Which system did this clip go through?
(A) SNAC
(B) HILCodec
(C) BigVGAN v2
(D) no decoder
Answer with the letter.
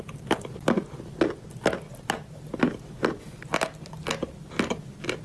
D